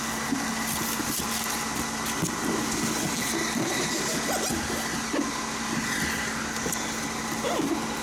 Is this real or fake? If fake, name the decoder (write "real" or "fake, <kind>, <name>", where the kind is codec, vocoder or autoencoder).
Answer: real